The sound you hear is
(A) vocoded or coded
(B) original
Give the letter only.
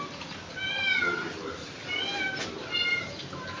B